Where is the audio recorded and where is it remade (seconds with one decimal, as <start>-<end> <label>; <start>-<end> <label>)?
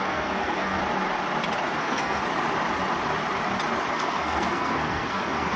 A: 0.0-0.8 remade; 0.8-1.8 recorded; 1.8-2.2 remade; 2.2-3.9 recorded; 3.9-5.6 remade